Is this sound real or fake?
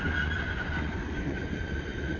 fake